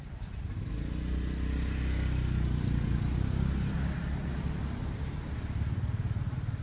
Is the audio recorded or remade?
recorded